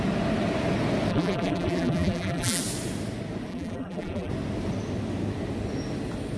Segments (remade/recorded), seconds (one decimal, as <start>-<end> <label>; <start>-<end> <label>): 0.0-1.1 recorded; 1.1-2.6 remade; 2.6-3.5 recorded; 3.5-4.3 remade; 4.3-6.4 recorded